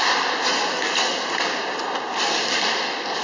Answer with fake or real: real